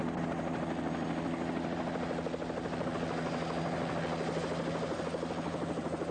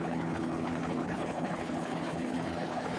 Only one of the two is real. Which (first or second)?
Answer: first